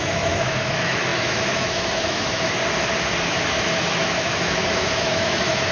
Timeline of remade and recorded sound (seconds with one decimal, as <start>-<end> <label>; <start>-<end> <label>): 0.0-2.6 remade; 2.6-3.2 recorded; 3.2-5.7 remade